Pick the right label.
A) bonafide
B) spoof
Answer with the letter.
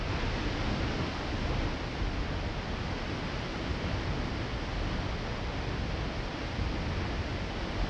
A